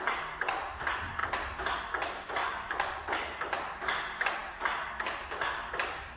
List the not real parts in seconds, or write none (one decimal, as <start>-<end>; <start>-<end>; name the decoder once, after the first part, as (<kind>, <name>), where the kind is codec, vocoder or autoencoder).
2.4-3.0 (vocoder, Vocos)